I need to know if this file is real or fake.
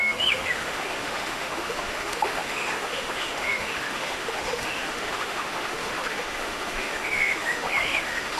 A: fake